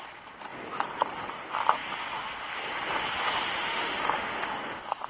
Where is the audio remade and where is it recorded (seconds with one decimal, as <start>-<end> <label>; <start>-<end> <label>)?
0.0-3.6 recorded; 3.6-4.5 remade; 4.5-5.1 recorded